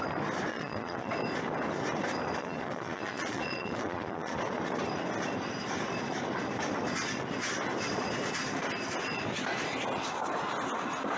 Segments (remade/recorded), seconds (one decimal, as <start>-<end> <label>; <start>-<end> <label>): 0.0-0.5 recorded; 0.5-1.1 remade; 1.1-2.4 recorded; 2.4-4.4 remade; 4.4-11.2 recorded